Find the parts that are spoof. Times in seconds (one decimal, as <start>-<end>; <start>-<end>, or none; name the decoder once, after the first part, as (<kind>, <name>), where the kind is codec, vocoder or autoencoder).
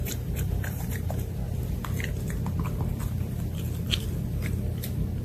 0.0-1.3 (vocoder, BigVGAN v2)